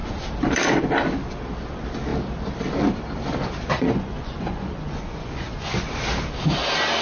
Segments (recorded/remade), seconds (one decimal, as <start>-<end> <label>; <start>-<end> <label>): 0.0-3.7 recorded; 3.7-5.9 remade; 5.9-7.0 recorded